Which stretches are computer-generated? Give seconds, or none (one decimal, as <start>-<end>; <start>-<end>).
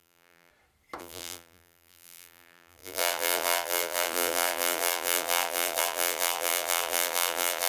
0.0-0.5; 1.0-7.7